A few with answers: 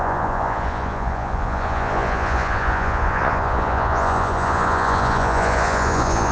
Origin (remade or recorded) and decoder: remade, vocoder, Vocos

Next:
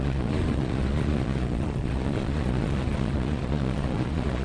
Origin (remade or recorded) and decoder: remade, vocoder, Vocos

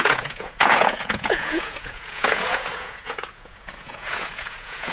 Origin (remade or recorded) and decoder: remade, vocoder, Vocos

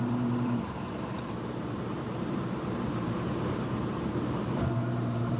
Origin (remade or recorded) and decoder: remade, vocoder, BigVGAN v2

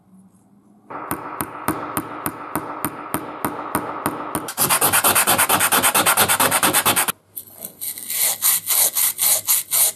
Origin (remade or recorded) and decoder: recorded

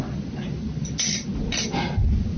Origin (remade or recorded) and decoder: recorded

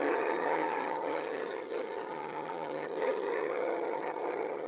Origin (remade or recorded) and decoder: remade, vocoder, HiFi-GAN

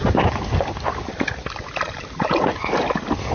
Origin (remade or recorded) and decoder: recorded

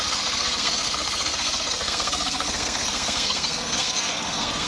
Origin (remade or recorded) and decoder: remade, codec, SNAC